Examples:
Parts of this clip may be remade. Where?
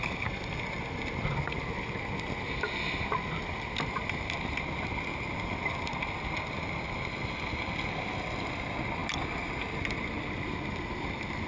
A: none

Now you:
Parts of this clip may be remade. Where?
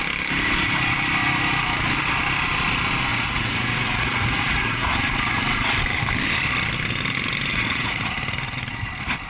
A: 3.1-4.9; 7.5-8.1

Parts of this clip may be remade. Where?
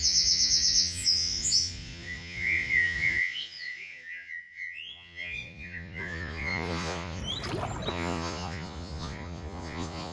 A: 0.0-7.2; 7.9-10.1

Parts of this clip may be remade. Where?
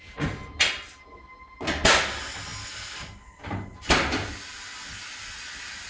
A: none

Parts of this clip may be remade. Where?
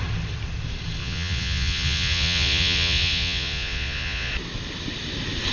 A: 1.0-4.3